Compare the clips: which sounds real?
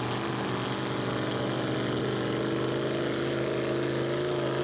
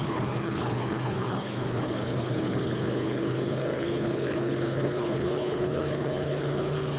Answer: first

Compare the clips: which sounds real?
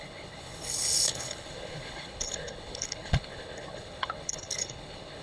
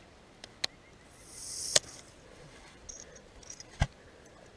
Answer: second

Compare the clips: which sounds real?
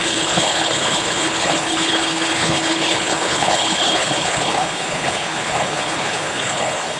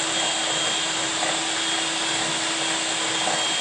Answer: second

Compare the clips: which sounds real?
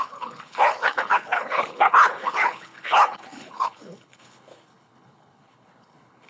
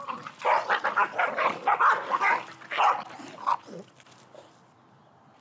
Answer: second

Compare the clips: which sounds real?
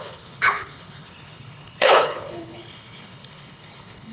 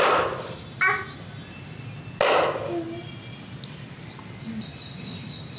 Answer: second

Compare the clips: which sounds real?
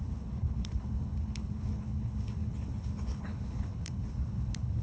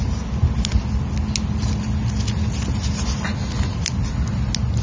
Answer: second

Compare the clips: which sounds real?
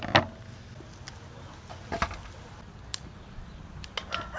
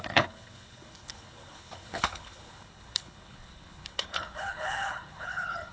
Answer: first